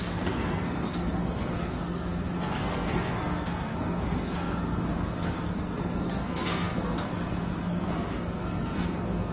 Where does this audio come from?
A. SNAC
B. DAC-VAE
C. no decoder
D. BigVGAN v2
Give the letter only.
A